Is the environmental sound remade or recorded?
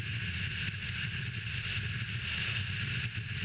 recorded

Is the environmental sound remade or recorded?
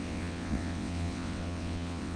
remade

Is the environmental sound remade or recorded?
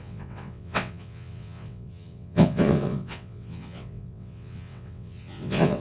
remade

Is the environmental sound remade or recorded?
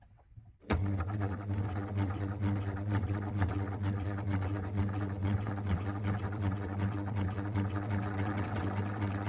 remade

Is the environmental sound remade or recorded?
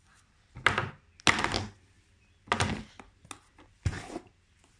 recorded